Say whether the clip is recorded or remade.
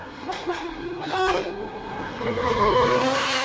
remade